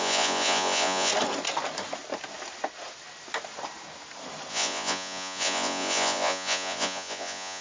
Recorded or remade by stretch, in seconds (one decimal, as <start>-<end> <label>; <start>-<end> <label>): 0.0-1.1 remade; 1.1-4.5 recorded; 4.5-7.6 remade